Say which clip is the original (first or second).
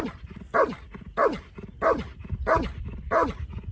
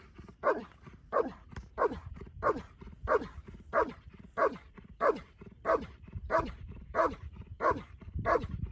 first